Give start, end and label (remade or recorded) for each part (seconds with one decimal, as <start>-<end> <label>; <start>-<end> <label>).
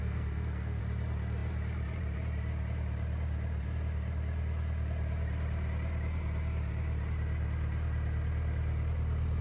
0.0-0.8 remade; 0.8-9.4 recorded